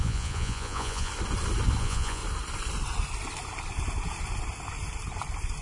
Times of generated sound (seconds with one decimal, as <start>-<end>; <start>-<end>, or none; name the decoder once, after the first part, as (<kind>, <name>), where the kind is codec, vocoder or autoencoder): 0.0-1.1 (vocoder, Vocos); 1.8-2.2